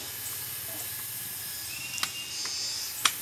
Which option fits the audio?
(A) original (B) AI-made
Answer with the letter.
A